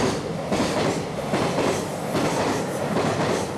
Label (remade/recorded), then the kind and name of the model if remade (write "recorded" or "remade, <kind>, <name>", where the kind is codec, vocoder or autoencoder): recorded